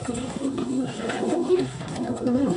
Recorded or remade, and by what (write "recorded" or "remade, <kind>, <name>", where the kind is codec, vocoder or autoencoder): remade, codec, SNAC